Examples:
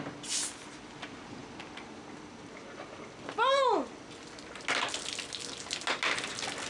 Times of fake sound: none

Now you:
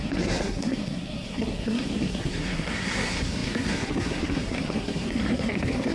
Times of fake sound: 0.0-5.9 (codec, SNAC)

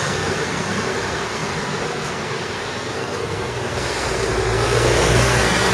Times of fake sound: 0.0-5.7 (codec, SNAC)

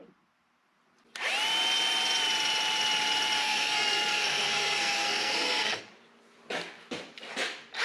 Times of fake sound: 3.4-5.8 (codec, SNAC)

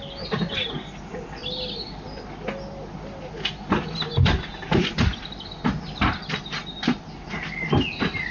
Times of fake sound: none

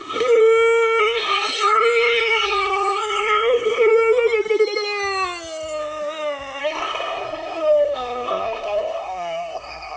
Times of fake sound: 0.0-0.4 (codec, SNAC); 1.0-3.9; 6.6-10.0

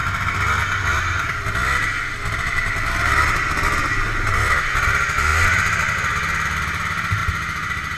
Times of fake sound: none